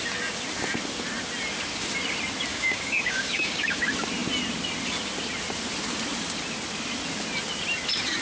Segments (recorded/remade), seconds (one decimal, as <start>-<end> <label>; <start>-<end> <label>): 0.0-2.5 recorded; 2.5-3.8 remade; 3.8-8.2 recorded